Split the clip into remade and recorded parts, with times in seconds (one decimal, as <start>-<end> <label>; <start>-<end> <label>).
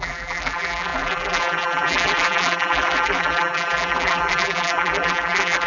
0.0-5.7 remade